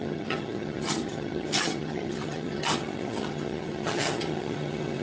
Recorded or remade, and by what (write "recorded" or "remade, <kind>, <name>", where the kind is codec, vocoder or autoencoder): remade, vocoder, HiFi-GAN